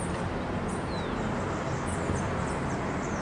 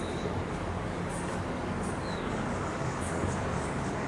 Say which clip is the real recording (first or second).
first